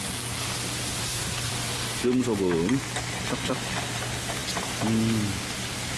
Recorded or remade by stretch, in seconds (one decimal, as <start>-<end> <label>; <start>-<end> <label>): 0.0-1.0 recorded; 1.0-1.5 remade; 1.5-6.0 recorded